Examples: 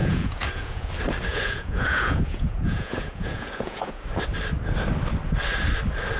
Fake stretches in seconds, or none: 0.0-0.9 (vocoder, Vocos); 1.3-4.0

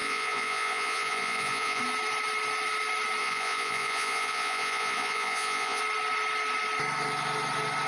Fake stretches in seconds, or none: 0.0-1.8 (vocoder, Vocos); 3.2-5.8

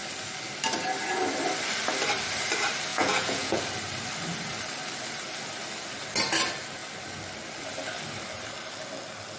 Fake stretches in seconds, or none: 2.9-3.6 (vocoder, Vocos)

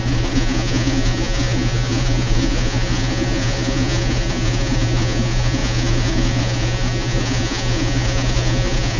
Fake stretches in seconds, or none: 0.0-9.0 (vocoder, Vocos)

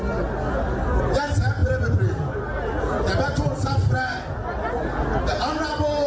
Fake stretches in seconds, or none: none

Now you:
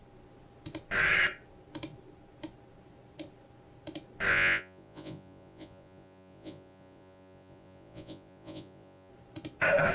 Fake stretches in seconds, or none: 4.3-9.1 (vocoder, Vocos)

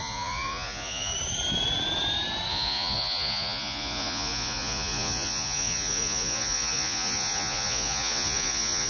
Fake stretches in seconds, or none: 0.0-1.1 (vocoder, Vocos); 2.5-8.9

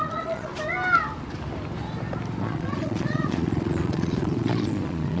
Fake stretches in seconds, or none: 0.0-0.5 (vocoder, Vocos); 2.4-5.2